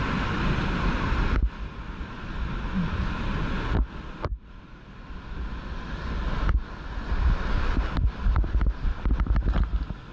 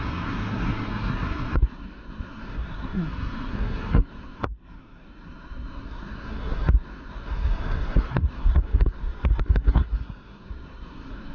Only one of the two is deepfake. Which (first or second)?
second